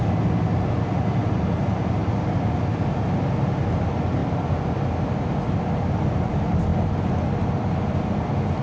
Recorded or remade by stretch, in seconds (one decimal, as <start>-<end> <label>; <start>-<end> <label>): 0.0-8.6 recorded